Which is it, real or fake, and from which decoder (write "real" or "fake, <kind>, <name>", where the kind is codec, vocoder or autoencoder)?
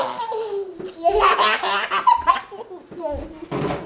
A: real